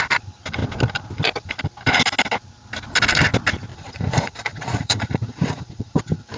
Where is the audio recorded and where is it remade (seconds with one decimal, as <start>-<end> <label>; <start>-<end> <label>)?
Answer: 0.0-3.7 recorded; 3.7-6.0 remade; 6.0-6.4 recorded